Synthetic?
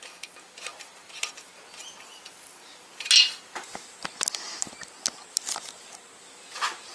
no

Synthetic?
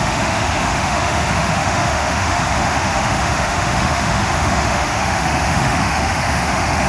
yes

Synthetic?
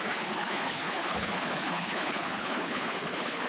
yes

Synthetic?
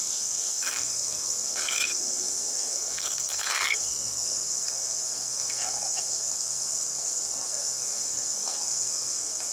yes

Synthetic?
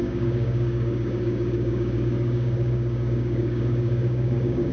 yes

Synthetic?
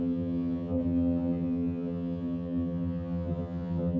yes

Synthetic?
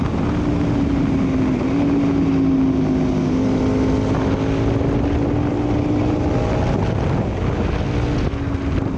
no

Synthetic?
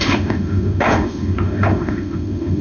yes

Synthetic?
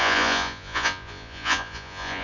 yes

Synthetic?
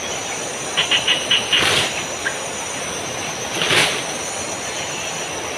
no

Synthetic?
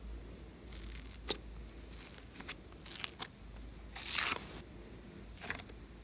no